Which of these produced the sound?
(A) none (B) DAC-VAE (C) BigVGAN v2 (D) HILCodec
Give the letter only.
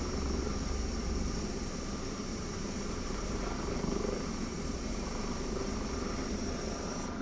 C